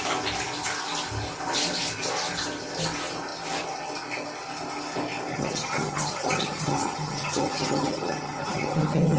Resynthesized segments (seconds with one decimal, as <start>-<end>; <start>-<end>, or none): 5.3-9.2